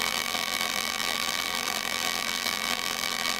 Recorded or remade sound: remade